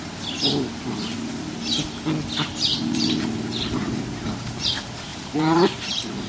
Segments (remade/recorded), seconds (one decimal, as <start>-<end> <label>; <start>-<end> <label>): 0.0-2.7 recorded; 2.7-3.9 remade; 3.9-5.1 recorded; 5.1-5.8 remade; 5.8-6.3 recorded